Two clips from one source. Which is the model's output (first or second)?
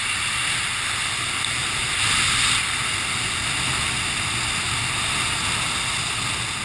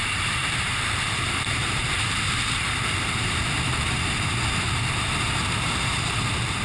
second